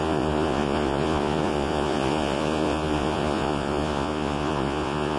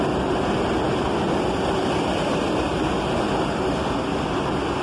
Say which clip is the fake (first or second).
first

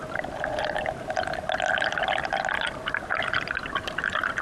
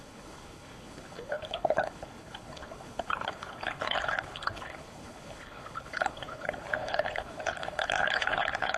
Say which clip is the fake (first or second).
second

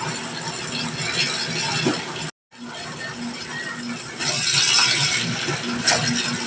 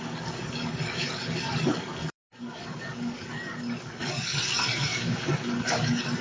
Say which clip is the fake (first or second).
second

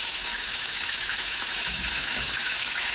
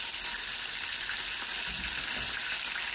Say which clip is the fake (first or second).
first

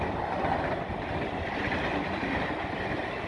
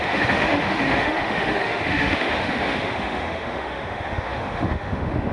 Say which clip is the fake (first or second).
second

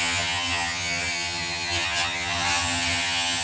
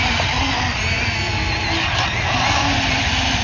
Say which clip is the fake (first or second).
first